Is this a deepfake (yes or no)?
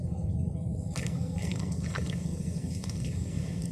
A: yes